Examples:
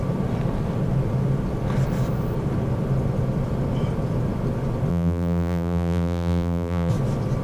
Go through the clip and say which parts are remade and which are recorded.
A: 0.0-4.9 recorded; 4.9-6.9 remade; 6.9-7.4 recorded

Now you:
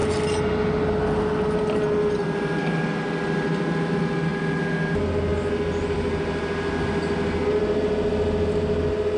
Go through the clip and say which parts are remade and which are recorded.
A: 0.0-9.2 recorded